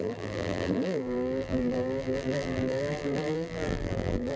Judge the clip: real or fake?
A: fake